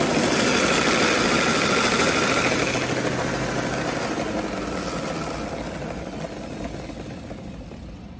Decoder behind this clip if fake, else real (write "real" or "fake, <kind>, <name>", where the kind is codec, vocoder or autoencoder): real